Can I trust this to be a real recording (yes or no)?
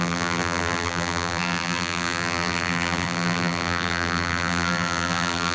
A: no